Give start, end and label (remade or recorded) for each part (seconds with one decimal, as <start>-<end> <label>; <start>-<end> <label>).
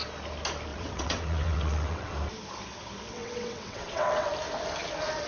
0.0-0.7 recorded; 0.7-2.1 remade; 2.1-3.1 recorded; 3.1-4.3 remade; 4.3-5.3 recorded